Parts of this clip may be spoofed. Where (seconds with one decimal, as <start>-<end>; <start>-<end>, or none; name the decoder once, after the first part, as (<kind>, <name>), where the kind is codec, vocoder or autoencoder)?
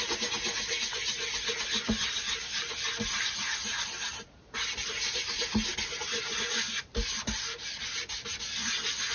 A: none